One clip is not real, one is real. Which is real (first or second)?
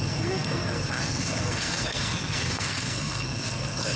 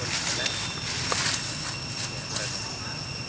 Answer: second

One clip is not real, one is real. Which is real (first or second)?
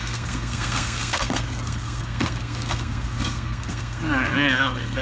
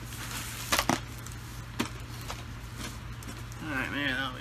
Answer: second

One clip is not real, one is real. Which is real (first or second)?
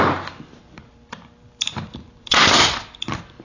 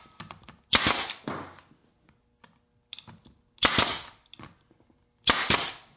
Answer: second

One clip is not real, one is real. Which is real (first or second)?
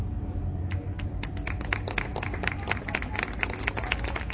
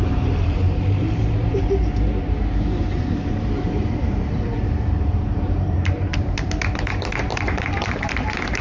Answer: first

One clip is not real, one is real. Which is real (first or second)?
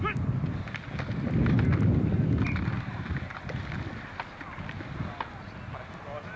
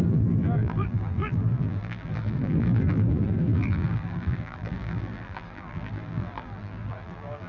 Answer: first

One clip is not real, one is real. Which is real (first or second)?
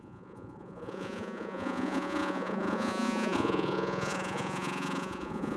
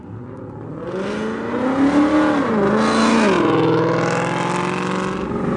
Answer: second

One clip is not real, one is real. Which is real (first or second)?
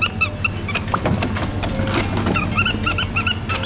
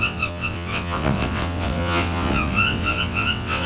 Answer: first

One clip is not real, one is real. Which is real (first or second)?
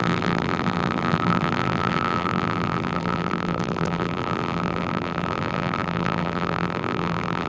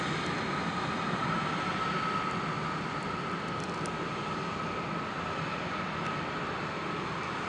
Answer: second